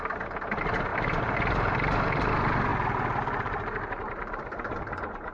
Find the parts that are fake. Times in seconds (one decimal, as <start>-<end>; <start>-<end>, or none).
0.9-2.2; 2.7-5.3